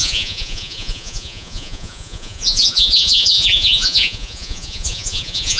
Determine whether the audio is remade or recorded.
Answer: remade